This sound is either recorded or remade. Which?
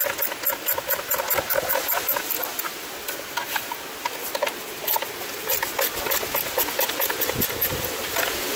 recorded